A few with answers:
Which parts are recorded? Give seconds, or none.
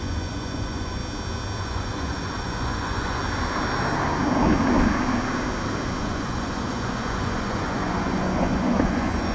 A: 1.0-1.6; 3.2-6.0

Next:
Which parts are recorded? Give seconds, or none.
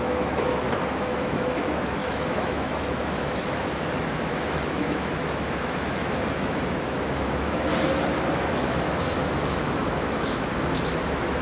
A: 7.7-8.5